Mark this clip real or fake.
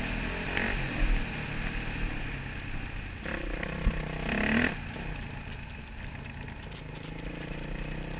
real